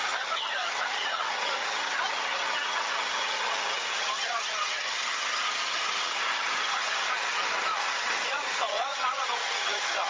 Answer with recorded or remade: remade